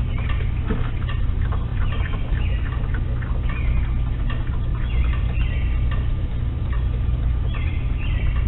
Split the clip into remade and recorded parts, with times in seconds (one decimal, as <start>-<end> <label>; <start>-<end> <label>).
0.0-1.7 recorded; 1.7-2.8 remade; 2.8-4.7 recorded; 4.7-5.2 remade; 5.2-8.5 recorded